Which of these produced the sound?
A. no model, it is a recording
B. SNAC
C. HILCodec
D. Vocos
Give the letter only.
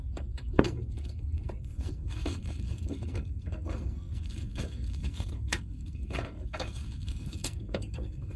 B